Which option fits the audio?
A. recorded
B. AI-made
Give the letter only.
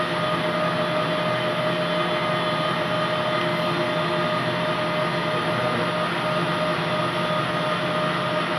A